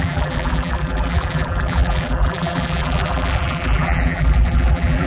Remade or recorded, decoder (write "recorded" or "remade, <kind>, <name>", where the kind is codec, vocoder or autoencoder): remade, vocoder, BigVGAN v2